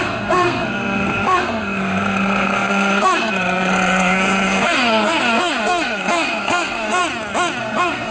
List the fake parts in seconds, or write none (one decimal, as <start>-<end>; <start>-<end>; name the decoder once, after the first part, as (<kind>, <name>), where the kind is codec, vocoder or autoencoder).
0.0-7.0 (codec, SNAC); 7.6-8.1